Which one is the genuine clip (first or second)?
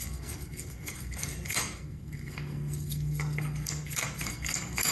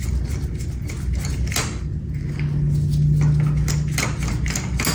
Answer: second